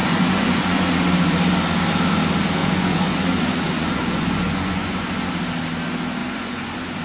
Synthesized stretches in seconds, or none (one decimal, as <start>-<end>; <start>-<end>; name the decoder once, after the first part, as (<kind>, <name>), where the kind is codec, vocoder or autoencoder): 0.0-0.9 (vocoder, Vocos); 2.6-5.3; 6.2-7.0